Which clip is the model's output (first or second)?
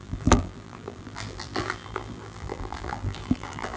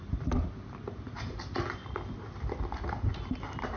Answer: first